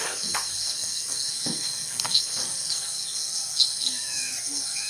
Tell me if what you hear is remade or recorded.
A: remade